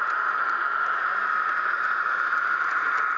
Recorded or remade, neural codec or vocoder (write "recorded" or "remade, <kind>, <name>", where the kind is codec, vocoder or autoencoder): recorded